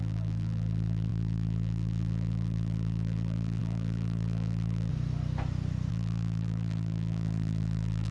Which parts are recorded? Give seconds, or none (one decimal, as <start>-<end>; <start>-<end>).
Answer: 4.9-5.9